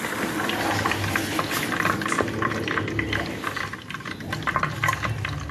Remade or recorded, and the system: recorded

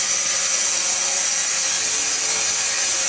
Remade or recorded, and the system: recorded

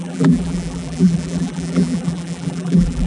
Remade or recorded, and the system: remade, vocoder, BigVGAN v2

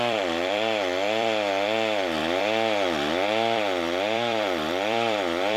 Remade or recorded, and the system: remade, vocoder, BigVGAN v2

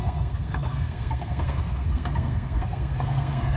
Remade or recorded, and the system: remade, codec, SNAC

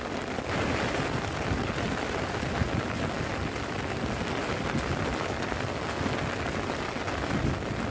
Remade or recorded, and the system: recorded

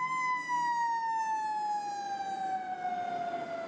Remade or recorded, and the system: recorded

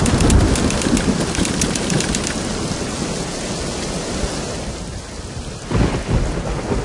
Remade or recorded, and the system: recorded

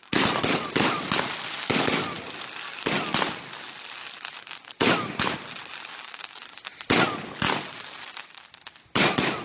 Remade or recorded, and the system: recorded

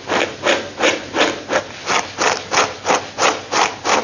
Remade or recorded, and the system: recorded